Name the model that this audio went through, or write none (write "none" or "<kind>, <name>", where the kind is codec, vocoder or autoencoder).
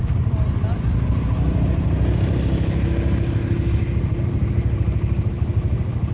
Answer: none